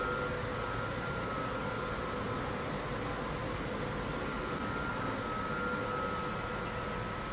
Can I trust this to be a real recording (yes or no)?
yes